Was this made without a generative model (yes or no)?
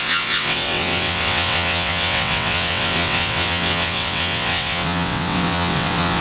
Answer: no